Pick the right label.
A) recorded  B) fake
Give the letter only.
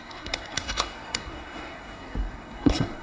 B